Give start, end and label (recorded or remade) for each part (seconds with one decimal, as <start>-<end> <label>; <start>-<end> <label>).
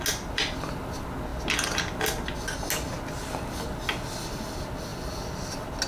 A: 0.0-5.9 recorded